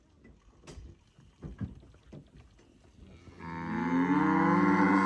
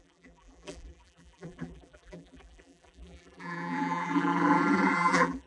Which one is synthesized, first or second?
second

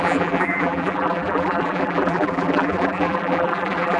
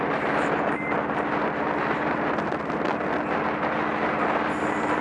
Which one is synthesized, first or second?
first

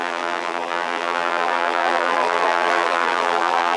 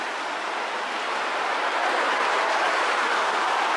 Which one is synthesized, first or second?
first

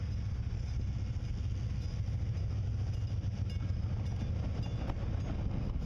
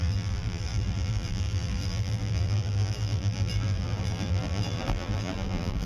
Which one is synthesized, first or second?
second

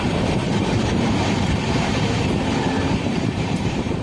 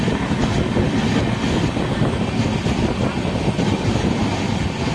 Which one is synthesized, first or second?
first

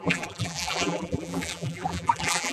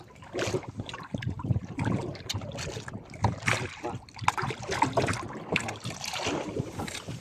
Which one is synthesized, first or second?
first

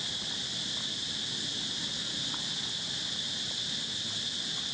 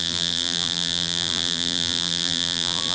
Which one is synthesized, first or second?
second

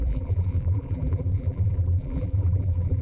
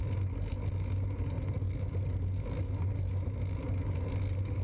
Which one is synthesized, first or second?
first